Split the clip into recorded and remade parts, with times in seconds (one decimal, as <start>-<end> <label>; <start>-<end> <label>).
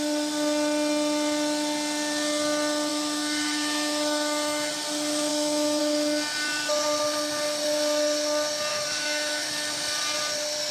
0.0-2.9 recorded; 2.9-4.7 remade; 4.7-5.3 recorded; 5.3-5.8 remade; 5.8-8.7 recorded; 8.7-9.5 remade; 9.5-10.7 recorded